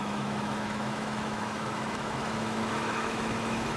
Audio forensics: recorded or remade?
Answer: remade